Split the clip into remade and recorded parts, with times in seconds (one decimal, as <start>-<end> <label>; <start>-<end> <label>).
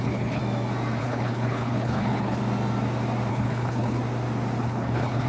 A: 0.0-0.4 remade; 0.4-1.0 recorded; 1.0-2.4 remade; 2.4-3.3 recorded; 3.3-4.0 remade; 4.0-4.6 recorded; 4.6-5.3 remade